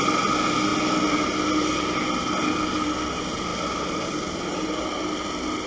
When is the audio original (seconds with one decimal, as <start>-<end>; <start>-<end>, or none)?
0.0-5.7